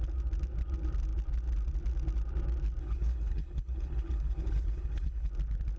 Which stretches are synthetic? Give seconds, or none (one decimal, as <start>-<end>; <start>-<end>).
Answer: 2.8-5.3

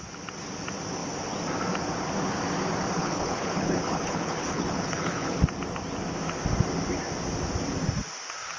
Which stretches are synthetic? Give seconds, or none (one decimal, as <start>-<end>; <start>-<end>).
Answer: 3.0-5.4

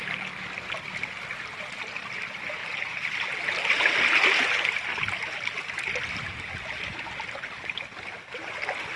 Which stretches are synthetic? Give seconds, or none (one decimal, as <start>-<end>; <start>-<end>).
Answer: none

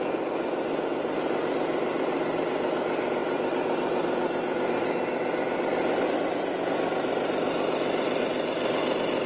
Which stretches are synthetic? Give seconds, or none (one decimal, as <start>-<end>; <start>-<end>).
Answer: none

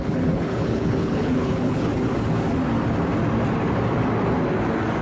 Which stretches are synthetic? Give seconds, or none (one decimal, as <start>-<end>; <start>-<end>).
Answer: 0.0-1.9

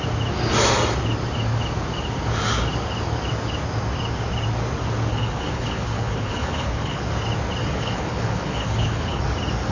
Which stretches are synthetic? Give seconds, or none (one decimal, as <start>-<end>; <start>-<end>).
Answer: 5.1-7.1; 7.6-9.2

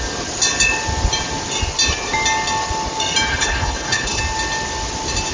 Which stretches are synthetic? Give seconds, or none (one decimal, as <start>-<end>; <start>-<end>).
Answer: 3.3-4.2

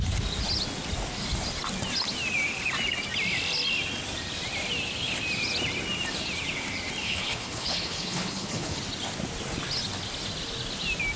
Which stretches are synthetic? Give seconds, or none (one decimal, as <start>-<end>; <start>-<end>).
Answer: 7.0-8.8